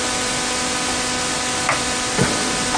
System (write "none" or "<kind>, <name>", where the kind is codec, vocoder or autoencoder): none